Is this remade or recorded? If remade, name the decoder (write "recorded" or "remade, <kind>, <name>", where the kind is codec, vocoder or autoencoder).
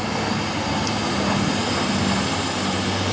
recorded